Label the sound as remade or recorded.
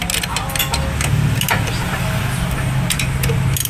recorded